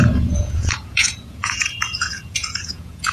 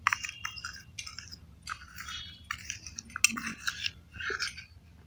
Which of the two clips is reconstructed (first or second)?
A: first